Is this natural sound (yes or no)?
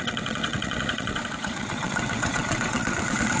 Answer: no